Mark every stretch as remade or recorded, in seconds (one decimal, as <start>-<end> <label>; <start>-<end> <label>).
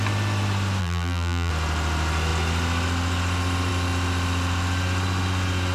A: 0.0-0.8 recorded; 0.8-1.5 remade; 1.5-5.7 recorded